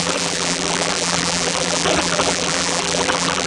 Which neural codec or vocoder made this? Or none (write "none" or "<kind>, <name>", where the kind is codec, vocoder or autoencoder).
vocoder, BigVGAN v2